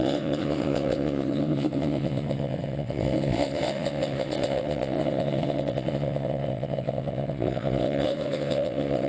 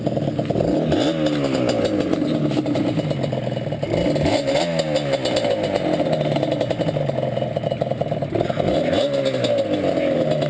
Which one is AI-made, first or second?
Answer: first